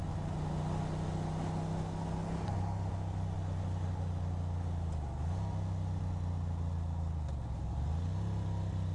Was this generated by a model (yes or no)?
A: no